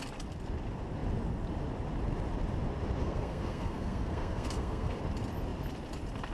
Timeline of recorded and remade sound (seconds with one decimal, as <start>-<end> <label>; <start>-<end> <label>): 0.0-3.0 recorded; 3.0-5.0 remade; 5.0-6.3 recorded

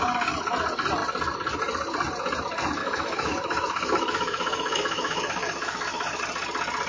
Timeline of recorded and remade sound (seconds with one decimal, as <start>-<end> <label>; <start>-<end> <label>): 0.0-2.8 recorded; 2.8-6.2 remade; 6.2-6.9 recorded